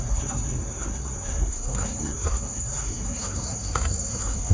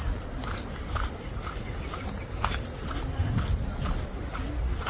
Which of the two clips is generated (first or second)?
first